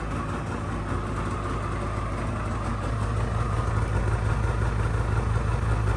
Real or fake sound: real